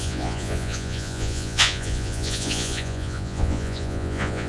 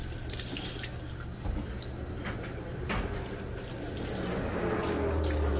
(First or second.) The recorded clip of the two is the second